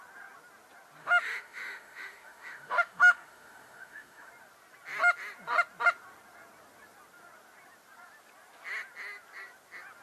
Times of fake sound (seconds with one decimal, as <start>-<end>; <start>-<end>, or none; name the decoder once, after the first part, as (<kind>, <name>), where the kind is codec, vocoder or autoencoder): 1.0-4.3 (autoencoder, DAC-VAE)